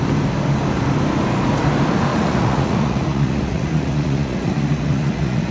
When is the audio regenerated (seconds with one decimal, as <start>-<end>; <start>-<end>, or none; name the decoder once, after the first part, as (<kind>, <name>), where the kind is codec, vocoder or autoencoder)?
2.1-5.5 (vocoder, Vocos)